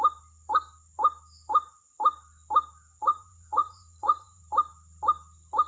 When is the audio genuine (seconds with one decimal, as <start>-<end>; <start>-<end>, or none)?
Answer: 0.0-3.0; 4.4-5.7